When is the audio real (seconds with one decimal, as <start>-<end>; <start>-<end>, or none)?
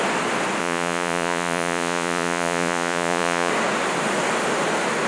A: 0.0-0.6; 3.5-5.1